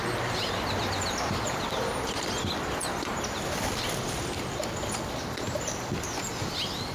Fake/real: fake